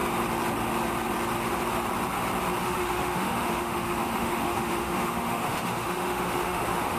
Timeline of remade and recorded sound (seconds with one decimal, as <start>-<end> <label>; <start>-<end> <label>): 0.0-2.6 recorded; 2.6-7.0 remade

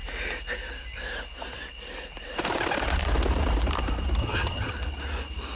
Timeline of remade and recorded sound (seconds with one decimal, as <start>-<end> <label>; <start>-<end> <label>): 0.0-4.2 recorded; 4.2-4.7 remade; 4.7-5.6 recorded

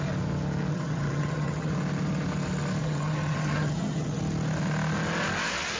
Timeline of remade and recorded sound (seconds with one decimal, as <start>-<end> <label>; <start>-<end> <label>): 0.0-0.7 recorded; 0.7-1.7 remade; 1.7-2.8 recorded; 2.8-4.2 remade; 4.2-5.8 recorded

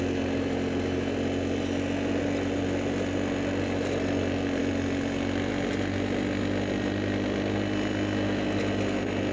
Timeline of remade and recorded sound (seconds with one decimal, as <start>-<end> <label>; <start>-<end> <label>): 0.0-9.3 recorded

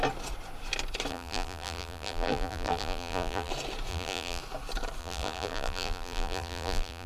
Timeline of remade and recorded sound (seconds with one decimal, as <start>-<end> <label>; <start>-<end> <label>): 0.0-1.1 recorded; 1.1-3.5 remade; 3.5-3.9 recorded; 3.9-4.4 remade; 4.4-5.0 recorded; 5.0-7.1 remade

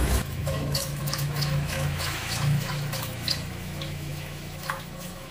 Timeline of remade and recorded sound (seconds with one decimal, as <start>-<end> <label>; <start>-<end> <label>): 0.0-5.3 remade

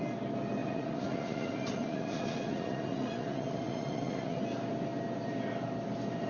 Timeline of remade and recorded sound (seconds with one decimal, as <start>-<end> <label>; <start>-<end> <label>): 0.0-0.6 recorded; 0.6-4.4 remade; 4.4-6.3 recorded